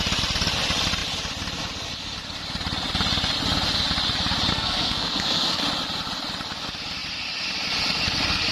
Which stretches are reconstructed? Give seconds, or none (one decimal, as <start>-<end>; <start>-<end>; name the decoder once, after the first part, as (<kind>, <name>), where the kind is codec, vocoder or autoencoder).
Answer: 4.5-5.6 (codec, SNAC)